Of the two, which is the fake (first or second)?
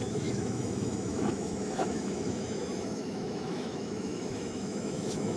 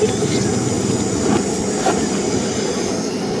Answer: first